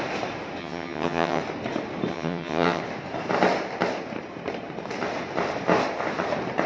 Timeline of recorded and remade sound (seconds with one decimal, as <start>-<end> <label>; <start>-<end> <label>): 0.0-0.6 recorded; 0.6-1.4 remade; 1.4-2.1 recorded; 2.1-2.8 remade; 2.8-6.7 recorded